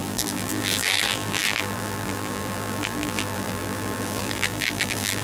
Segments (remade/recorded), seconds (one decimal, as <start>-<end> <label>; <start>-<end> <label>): 0.0-5.2 remade